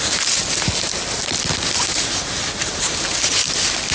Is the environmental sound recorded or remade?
recorded